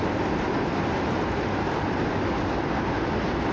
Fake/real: real